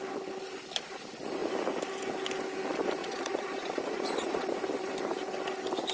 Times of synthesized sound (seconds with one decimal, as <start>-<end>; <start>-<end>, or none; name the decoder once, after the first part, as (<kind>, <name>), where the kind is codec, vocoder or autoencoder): 3.0-4.6 (vocoder, Vocos)